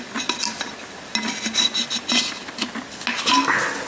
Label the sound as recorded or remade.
recorded